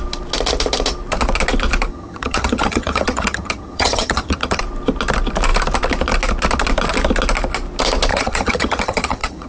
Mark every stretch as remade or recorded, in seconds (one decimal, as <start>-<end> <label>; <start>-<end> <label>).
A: 0.0-1.9 recorded; 1.9-4.6 remade; 4.6-8.1 recorded; 8.1-9.5 remade